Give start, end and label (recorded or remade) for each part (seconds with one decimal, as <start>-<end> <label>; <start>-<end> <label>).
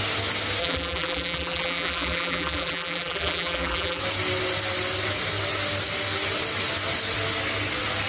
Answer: 0.0-0.6 recorded; 0.6-4.0 remade; 4.0-8.1 recorded